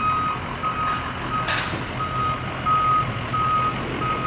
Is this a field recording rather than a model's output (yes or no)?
yes